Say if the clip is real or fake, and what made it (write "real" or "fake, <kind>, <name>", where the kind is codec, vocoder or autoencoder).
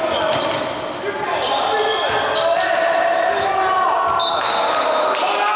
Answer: real